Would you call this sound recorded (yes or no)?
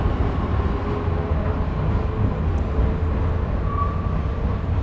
yes